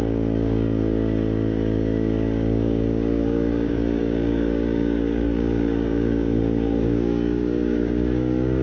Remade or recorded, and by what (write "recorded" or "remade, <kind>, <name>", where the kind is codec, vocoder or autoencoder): remade, codec, DAC